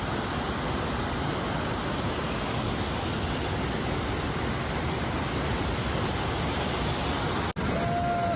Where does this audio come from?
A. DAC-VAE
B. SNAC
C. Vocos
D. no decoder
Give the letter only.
D